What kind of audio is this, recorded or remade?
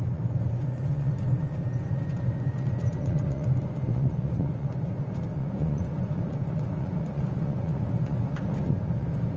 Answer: remade